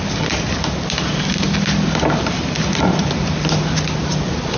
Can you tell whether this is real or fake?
real